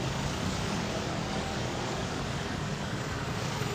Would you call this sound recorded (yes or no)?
no